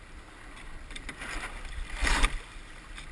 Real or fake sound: real